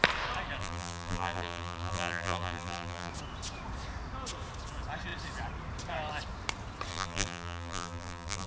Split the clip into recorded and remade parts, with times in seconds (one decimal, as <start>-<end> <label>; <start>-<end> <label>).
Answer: 0.0-0.6 recorded; 0.6-3.1 remade; 3.1-6.9 recorded; 6.9-8.5 remade